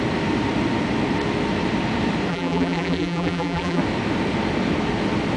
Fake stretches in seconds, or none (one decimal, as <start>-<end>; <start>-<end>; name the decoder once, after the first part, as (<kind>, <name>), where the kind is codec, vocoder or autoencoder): 2.3-3.8 (vocoder, BigVGAN v2)

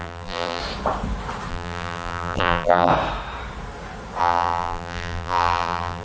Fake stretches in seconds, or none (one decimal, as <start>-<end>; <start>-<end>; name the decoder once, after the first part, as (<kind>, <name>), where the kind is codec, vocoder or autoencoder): 0.0-0.6 (vocoder, BigVGAN v2); 1.5-2.9; 4.2-6.0

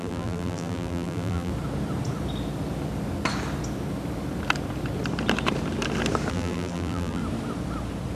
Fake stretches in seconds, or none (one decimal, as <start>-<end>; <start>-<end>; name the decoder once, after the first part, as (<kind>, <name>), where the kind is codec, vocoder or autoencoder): 0.0-1.5 (vocoder, BigVGAN v2); 6.3-7.2

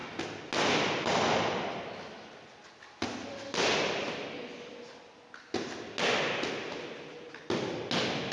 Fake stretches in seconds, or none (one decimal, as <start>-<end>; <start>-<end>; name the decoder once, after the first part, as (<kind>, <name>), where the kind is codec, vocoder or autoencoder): none

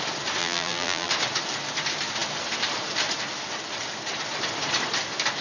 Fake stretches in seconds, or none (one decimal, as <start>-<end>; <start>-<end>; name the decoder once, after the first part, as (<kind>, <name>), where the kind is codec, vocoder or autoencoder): 0.4-1.1 (vocoder, BigVGAN v2)

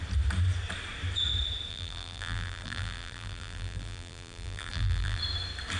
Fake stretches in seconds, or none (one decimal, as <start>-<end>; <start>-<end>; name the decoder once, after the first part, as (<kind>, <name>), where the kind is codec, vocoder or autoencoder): 1.7-5.2 (vocoder, BigVGAN v2)

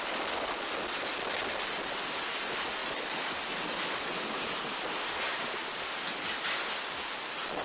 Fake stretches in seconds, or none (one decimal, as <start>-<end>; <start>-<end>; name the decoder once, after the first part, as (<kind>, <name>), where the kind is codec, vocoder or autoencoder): 2.8-3.5 (vocoder, BigVGAN v2)

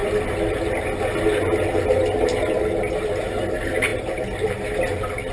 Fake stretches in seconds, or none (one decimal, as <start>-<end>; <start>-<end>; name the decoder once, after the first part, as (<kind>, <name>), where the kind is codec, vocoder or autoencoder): none